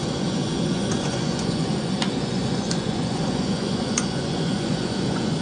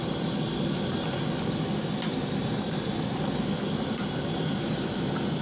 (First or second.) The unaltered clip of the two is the second